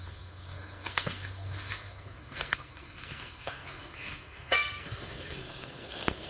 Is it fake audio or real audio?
fake